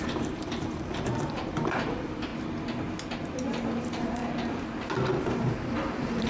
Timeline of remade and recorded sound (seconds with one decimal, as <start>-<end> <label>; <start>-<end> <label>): 0.0-2.3 remade; 2.3-3.8 recorded; 3.8-4.2 remade; 4.2-5.2 recorded; 5.2-6.3 remade